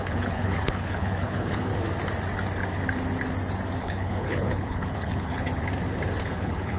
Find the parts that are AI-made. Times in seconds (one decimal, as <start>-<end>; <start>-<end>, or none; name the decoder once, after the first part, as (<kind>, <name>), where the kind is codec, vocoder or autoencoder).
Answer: 0.0-1.7 (codec, HILCodec); 3.8-5.5; 6.2-6.8